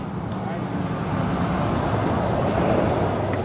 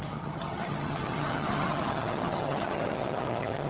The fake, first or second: second